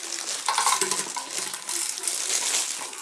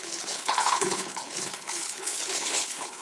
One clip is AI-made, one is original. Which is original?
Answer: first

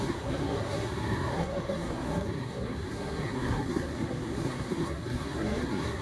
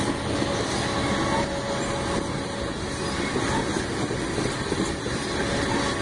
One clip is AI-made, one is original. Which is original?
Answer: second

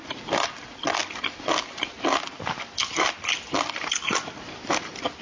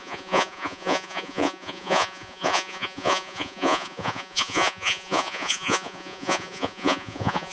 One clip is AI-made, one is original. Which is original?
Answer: first